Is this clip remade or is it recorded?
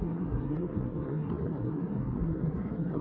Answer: remade